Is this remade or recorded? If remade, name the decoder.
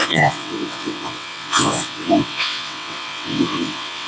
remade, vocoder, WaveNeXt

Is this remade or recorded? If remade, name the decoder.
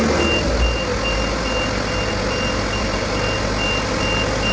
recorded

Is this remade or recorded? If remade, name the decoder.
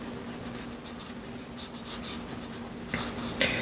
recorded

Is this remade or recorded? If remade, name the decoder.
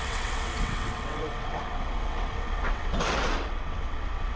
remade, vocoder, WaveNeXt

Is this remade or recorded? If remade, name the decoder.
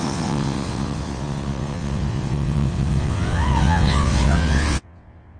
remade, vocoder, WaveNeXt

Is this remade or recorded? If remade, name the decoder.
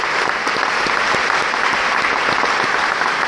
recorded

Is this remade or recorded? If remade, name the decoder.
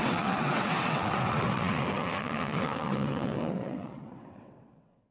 remade, vocoder, WaveNeXt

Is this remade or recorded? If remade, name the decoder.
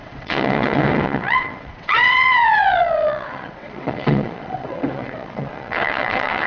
remade, vocoder, WaveNeXt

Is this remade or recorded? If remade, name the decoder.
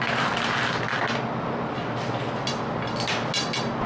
recorded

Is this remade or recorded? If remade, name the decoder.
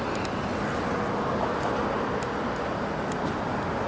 recorded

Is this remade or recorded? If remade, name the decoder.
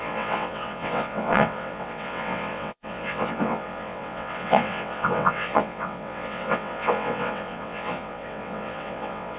remade, vocoder, WaveNeXt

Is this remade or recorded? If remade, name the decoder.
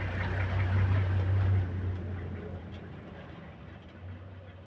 recorded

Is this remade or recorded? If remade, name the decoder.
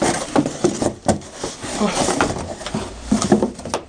recorded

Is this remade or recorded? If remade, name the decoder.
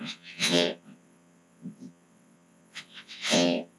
remade, vocoder, WaveNeXt